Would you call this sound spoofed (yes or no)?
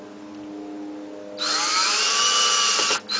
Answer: no